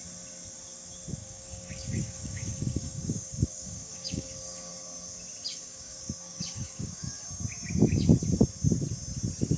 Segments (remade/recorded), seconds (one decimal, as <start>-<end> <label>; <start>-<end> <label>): 0.0-1.2 recorded; 1.2-4.7 remade; 4.7-5.5 recorded; 5.5-7.2 remade; 7.2-9.6 recorded